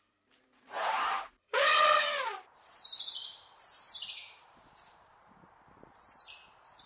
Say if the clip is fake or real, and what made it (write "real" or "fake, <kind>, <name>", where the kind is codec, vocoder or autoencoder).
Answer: fake, vocoder, BigVGAN v2